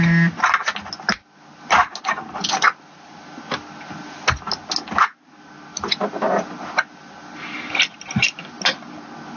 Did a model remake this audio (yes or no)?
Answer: no